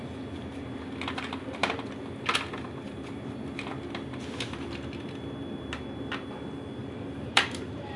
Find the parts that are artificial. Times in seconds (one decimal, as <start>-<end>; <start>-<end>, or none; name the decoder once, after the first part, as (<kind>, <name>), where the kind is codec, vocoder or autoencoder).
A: 6.8-8.0 (vocoder, BigVGAN v2)

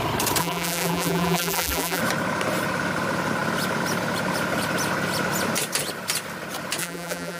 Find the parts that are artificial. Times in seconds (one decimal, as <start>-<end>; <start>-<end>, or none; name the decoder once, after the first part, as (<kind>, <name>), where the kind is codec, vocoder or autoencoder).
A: 0.4-2.0 (vocoder, BigVGAN v2); 6.8-7.4

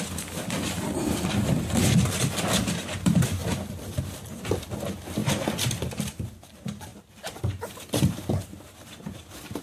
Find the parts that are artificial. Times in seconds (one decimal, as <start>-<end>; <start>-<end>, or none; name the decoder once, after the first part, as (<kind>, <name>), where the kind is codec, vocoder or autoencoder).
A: 0.0-5.2 (vocoder, BigVGAN v2); 5.9-6.9

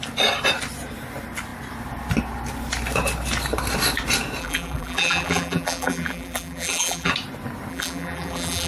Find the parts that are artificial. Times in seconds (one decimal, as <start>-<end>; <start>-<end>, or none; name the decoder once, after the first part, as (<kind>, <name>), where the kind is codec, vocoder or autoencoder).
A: 4.4-7.1 (vocoder, BigVGAN v2); 7.7-8.7

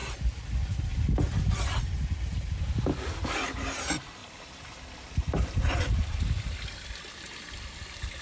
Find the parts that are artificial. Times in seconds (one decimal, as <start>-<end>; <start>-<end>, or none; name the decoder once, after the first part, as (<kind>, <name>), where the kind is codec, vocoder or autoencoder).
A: 4.2-8.2 (vocoder, BigVGAN v2)

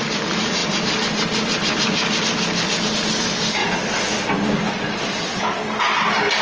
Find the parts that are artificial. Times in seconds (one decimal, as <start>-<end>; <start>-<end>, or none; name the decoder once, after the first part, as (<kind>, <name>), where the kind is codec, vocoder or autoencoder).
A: 0.6-2.2 (vocoder, BigVGAN v2)